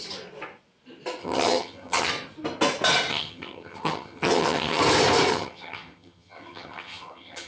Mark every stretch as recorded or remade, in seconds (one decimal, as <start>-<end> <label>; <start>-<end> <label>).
0.0-1.2 recorded; 1.2-2.1 remade; 2.1-3.1 recorded; 3.1-4.8 remade; 4.8-5.3 recorded; 5.3-7.5 remade